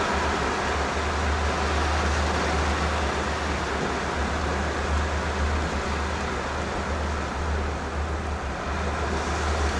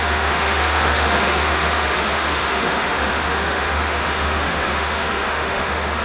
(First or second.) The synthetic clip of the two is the second